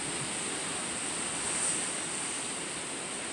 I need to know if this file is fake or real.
real